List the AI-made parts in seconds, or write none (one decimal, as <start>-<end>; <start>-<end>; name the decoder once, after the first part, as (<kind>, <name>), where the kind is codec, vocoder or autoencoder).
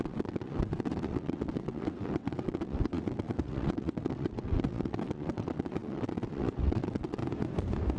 0.0-7.2 (vocoder, WaveNeXt)